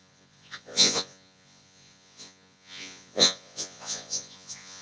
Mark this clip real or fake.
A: fake